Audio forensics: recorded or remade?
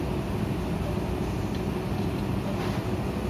recorded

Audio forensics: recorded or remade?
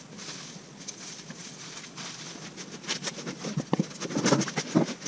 recorded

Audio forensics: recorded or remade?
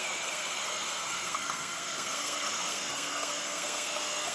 remade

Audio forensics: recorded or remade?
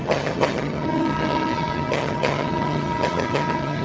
remade